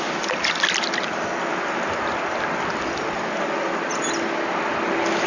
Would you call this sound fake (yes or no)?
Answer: no